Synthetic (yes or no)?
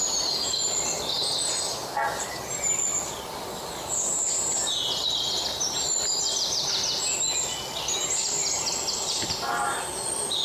no